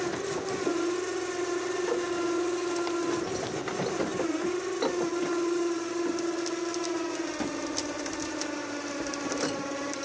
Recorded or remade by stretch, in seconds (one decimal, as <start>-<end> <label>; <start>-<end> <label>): 0.0-10.0 recorded

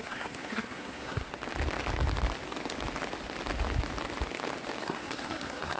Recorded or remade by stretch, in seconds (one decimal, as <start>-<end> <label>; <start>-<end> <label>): 0.0-1.3 remade; 1.3-4.8 recorded; 4.8-5.8 remade

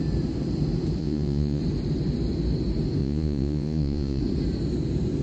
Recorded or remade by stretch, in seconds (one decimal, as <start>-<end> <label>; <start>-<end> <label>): 0.0-1.0 recorded; 1.0-1.6 remade; 1.6-3.0 recorded; 3.0-4.2 remade; 4.2-5.2 recorded